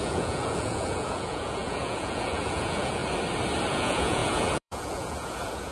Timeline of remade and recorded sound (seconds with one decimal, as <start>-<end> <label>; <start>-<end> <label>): 0.0-3.0 remade; 3.0-3.7 recorded; 3.7-5.7 remade